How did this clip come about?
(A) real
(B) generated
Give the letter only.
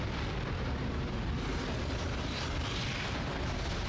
B